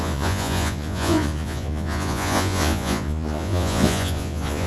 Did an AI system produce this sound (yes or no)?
yes